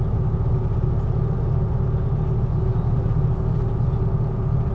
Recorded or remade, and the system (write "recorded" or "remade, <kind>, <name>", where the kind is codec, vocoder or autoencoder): recorded